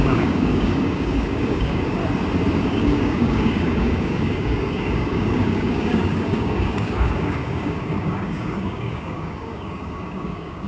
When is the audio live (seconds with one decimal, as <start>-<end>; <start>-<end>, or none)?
2.0-2.6